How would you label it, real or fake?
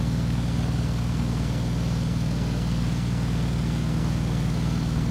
fake